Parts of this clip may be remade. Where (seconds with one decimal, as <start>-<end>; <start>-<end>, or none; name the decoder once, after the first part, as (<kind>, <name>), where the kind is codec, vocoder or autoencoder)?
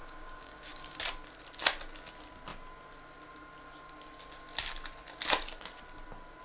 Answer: 0.0-1.0 (codec, DAC)